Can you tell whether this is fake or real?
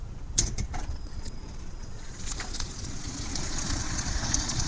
fake